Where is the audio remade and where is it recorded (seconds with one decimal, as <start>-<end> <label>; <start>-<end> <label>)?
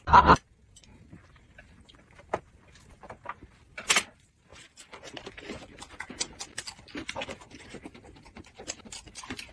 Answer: 0.0-3.4 remade; 3.4-4.1 recorded; 4.1-4.5 remade; 4.5-7.6 recorded; 7.6-9.5 remade